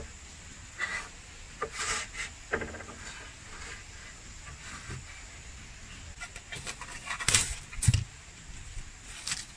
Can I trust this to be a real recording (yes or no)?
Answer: yes